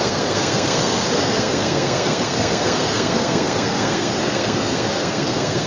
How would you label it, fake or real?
fake